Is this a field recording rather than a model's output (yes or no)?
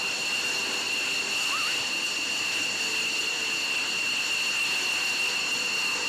yes